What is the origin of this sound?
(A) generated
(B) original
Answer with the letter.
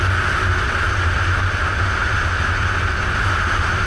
B